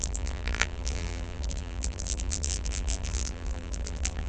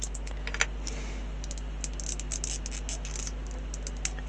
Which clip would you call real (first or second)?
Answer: second